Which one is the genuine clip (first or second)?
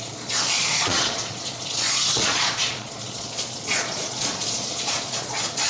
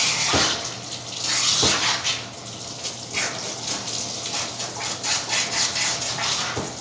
second